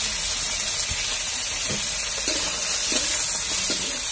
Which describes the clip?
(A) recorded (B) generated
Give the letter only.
A